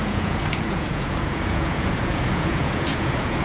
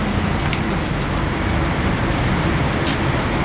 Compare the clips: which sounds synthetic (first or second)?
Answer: first